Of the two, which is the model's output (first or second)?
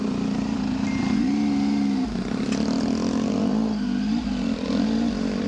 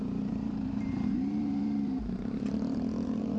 second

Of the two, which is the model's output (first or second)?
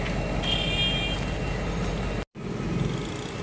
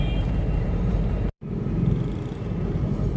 second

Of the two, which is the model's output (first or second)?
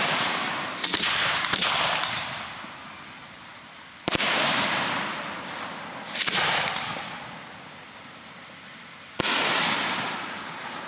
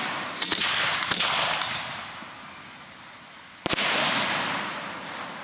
first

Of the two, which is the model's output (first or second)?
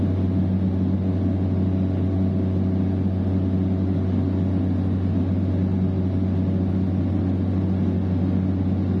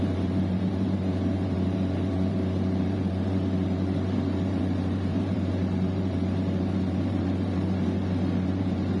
second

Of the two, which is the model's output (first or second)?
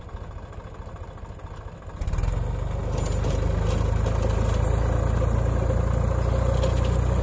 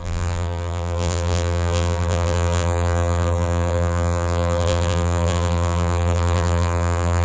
second